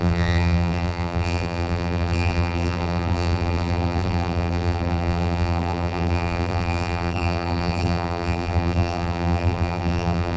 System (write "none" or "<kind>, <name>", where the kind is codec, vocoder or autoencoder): vocoder, BigVGAN v2